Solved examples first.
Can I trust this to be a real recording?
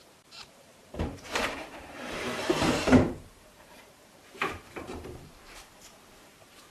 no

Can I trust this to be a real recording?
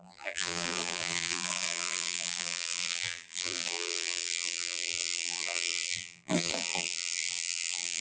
no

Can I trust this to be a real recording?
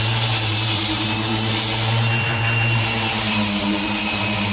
no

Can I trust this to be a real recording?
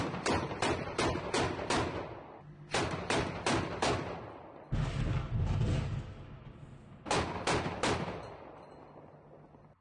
yes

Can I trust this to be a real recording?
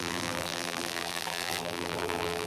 no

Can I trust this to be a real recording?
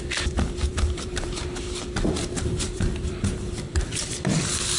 no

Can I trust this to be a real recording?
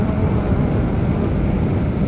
yes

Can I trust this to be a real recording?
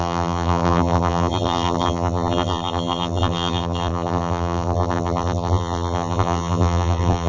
no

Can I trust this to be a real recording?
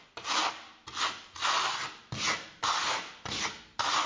yes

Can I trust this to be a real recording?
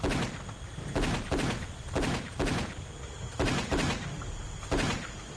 yes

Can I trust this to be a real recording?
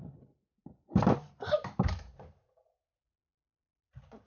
no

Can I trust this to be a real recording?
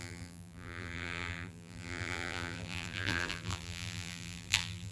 no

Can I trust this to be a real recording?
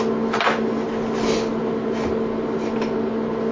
yes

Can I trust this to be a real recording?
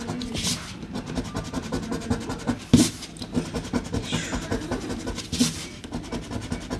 yes